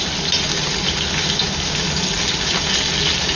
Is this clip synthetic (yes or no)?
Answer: no